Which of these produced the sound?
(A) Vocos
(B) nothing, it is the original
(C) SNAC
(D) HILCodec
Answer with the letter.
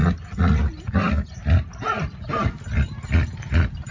B